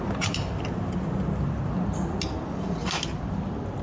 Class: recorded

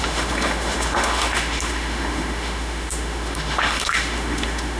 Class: remade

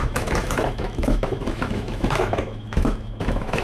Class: remade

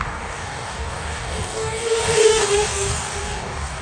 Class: remade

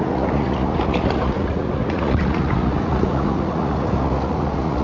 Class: remade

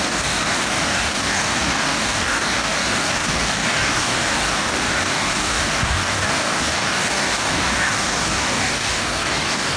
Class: remade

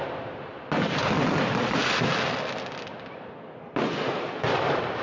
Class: recorded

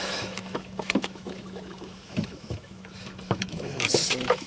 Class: remade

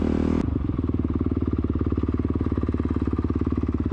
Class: recorded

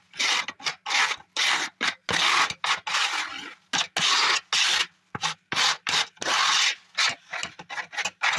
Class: recorded